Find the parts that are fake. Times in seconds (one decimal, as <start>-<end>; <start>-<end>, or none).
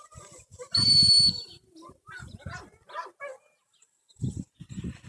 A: 0.5-3.6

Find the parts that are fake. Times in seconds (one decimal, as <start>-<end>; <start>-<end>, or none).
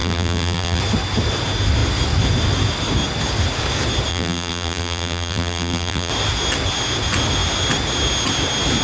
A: 0.0-0.8; 4.1-6.1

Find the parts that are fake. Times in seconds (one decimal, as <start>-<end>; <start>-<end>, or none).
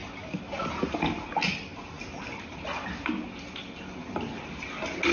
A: none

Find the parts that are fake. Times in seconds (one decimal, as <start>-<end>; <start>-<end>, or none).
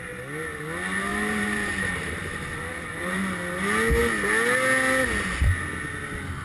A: 1.1-3.3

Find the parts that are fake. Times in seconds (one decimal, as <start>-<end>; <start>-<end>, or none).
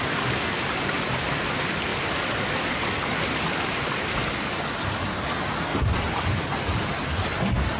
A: 1.9-3.3; 5.7-6.4